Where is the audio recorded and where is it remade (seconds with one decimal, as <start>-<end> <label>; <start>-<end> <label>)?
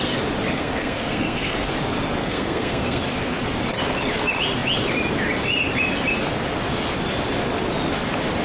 0.0-0.5 recorded; 0.5-1.7 remade; 1.7-2.2 recorded; 2.2-3.0 remade; 3.0-8.4 recorded